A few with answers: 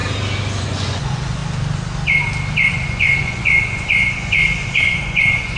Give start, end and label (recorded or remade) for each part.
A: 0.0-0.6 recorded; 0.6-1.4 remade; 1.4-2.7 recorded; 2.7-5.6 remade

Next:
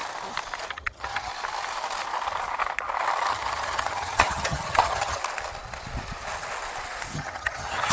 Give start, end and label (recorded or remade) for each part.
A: 0.0-0.7 recorded; 0.7-1.3 remade; 1.3-3.3 recorded; 3.3-5.2 remade; 5.2-7.1 recorded; 7.1-7.9 remade

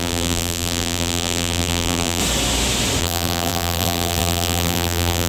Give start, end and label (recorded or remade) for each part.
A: 0.0-2.2 remade; 2.2-3.0 recorded; 3.0-5.3 remade